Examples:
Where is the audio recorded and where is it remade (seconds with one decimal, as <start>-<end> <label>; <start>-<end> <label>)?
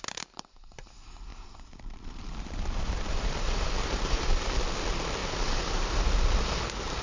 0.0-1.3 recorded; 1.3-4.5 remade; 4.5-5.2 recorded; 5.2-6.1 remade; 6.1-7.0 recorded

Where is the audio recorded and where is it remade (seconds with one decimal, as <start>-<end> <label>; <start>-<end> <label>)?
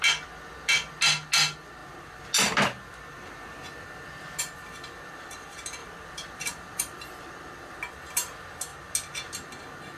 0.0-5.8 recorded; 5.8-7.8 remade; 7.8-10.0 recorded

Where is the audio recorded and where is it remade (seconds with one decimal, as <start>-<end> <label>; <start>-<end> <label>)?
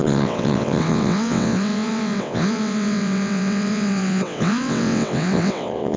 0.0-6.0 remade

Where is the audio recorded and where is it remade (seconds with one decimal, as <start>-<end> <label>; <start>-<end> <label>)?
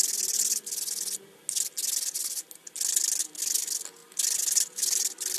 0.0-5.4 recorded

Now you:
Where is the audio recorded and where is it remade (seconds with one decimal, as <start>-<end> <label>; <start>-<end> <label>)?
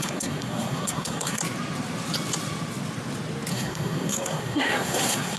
0.0-1.4 remade; 1.4-3.5 recorded; 3.5-5.4 remade